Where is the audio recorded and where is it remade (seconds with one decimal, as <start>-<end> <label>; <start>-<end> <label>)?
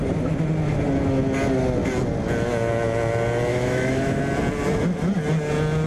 0.0-3.5 recorded; 3.5-4.2 remade; 4.2-5.9 recorded